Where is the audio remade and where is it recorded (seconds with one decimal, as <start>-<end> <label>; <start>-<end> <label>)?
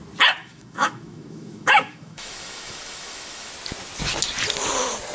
0.0-0.4 recorded; 0.4-3.5 remade; 3.5-5.1 recorded